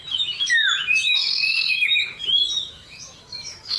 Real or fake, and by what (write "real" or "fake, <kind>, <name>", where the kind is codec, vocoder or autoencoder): fake, autoencoder, DAC-VAE